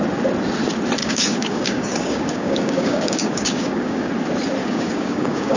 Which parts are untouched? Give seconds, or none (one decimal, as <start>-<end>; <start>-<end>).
0.0-1.0; 4.1-4.6